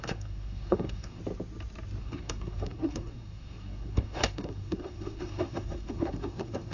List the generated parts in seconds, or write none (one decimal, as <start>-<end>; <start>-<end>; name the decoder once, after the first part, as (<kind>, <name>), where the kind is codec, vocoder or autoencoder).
0.0-1.2 (codec, SNAC); 2.0-6.7